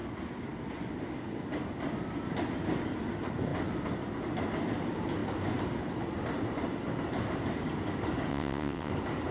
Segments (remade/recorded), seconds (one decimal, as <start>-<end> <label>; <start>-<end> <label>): 0.0-8.3 recorded; 8.3-8.9 remade; 8.9-9.3 recorded